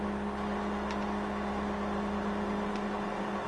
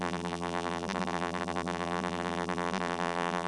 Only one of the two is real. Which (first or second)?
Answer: first